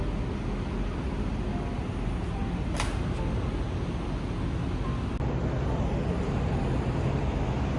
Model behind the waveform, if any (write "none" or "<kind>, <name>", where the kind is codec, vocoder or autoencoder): none